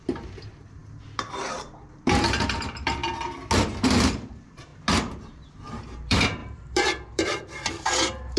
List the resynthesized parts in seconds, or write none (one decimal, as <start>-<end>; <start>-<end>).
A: 0.0-3.0; 3.8-4.7; 5.3-8.4